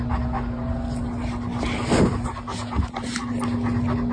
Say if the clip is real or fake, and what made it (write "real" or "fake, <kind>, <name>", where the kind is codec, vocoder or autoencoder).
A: real